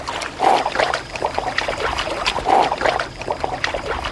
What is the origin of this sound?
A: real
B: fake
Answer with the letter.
A